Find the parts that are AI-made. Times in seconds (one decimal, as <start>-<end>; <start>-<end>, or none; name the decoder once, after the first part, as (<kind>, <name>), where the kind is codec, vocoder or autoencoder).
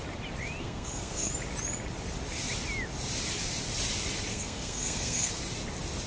0.6-1.3 (codec, SNAC); 4.3-5.3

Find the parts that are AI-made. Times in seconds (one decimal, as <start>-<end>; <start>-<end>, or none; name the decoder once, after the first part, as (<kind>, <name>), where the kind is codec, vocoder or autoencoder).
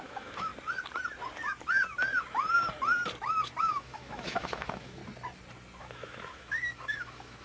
0.0-0.5 (autoencoder, DAC-VAE); 3.6-5.0; 5.8-7.4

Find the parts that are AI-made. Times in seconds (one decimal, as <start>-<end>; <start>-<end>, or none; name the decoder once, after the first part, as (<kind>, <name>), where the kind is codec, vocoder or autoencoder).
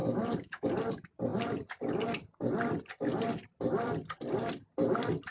0.0-0.7 (autoencoder, DAC-VAE)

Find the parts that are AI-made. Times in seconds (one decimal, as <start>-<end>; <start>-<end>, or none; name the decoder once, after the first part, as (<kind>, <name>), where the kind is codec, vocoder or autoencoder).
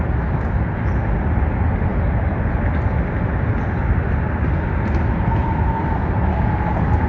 none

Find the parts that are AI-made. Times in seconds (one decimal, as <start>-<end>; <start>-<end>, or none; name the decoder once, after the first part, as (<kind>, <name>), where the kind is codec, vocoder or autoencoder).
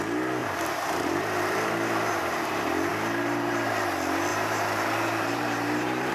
0.4-2.2 (vocoder, BigVGAN v2); 2.9-3.7; 4.3-6.1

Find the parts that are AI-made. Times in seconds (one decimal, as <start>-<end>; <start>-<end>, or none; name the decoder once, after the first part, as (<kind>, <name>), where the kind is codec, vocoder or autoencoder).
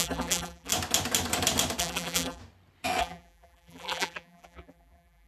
0.0-0.7 (vocoder, BigVGAN v2); 1.8-2.4; 3.0-5.3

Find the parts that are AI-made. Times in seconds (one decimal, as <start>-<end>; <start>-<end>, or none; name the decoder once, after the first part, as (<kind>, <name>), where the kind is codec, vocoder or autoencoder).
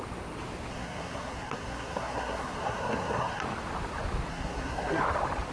0.7-3.4 (codec, SNAC); 4.3-5.0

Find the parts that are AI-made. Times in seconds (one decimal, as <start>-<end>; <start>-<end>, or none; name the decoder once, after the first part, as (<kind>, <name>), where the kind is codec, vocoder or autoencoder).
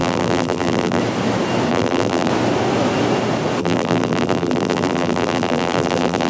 0.0-1.0 (vocoder, BigVGAN v2); 1.7-2.3; 3.6-6.3